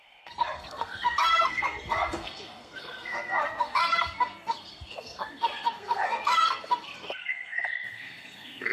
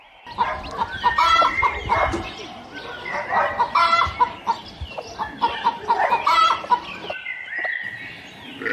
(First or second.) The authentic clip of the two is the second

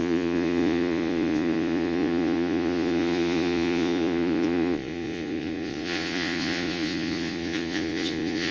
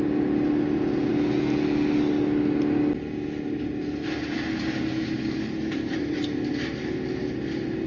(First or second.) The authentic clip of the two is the second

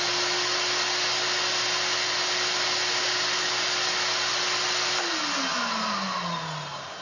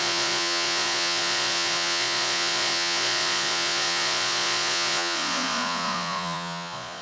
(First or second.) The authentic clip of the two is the first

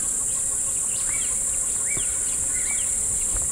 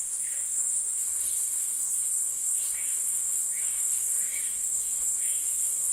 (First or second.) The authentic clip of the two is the first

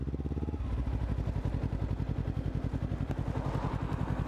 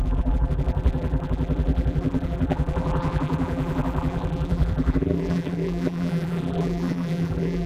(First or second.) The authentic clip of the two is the first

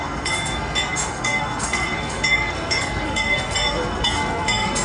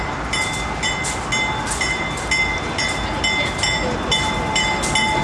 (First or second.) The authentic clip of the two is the second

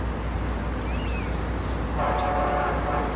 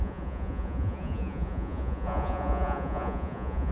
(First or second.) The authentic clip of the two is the first